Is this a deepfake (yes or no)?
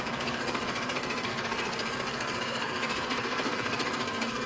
yes